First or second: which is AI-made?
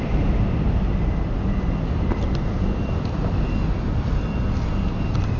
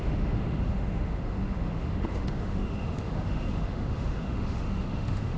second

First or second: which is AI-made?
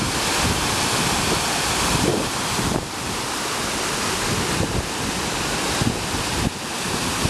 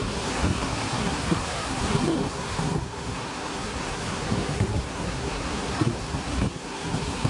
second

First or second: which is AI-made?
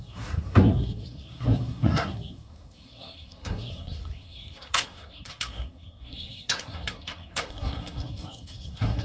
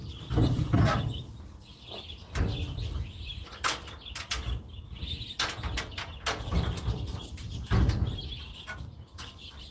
first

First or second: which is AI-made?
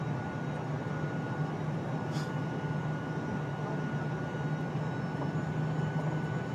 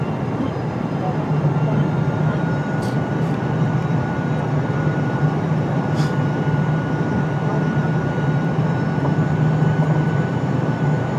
second